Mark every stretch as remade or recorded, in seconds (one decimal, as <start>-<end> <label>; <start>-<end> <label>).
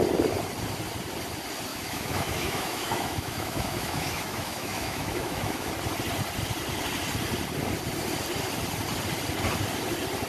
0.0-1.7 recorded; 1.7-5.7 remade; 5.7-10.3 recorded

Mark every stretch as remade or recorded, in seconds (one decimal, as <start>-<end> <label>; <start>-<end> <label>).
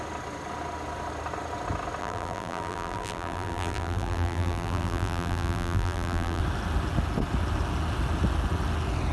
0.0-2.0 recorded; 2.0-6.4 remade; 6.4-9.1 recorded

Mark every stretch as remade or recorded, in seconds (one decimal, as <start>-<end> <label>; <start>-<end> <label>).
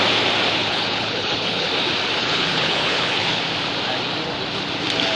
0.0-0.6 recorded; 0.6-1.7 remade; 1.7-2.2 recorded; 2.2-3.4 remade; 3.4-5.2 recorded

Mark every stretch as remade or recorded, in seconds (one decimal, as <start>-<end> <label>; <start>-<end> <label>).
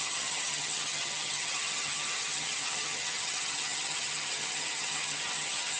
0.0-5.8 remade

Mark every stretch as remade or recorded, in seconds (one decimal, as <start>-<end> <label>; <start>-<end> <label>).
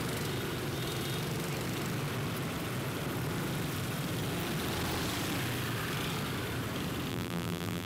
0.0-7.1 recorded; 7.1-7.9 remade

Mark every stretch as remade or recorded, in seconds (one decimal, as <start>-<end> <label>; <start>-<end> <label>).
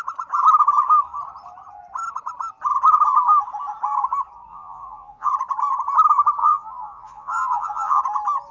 0.0-4.5 recorded; 4.5-5.3 remade; 5.3-6.4 recorded; 6.4-8.0 remade; 8.0-8.5 recorded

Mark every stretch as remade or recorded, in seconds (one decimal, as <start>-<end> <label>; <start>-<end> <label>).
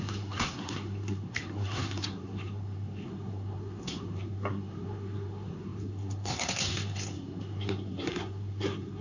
0.0-9.0 remade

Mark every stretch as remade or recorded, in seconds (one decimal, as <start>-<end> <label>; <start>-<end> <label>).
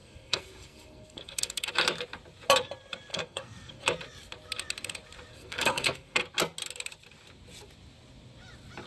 0.0-1.7 remade; 1.7-3.1 recorded; 3.1-3.8 remade; 3.8-5.3 recorded; 5.3-6.2 remade; 6.2-8.9 recorded